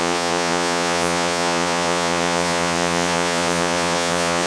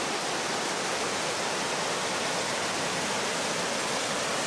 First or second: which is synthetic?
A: first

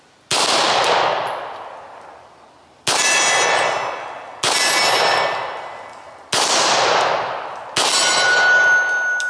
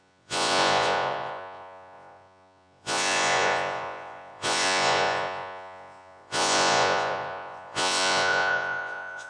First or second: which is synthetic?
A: second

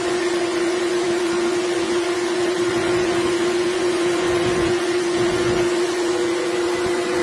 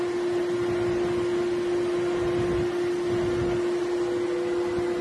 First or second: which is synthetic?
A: first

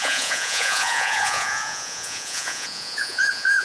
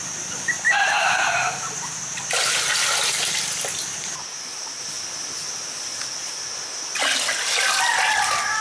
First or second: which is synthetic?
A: first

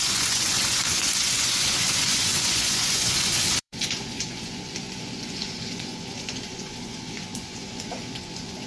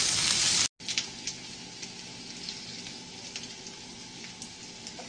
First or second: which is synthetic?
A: first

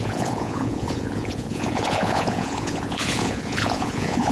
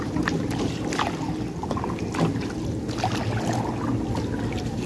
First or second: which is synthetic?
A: first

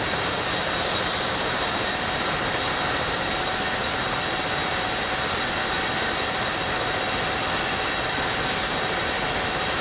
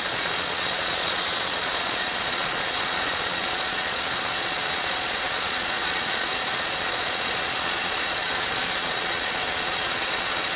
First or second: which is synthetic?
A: second